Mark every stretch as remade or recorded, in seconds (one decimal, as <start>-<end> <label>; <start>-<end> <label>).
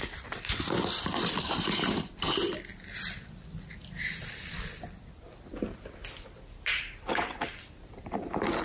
0.0-8.6 recorded